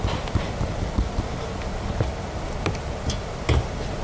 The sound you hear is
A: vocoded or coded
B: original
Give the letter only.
B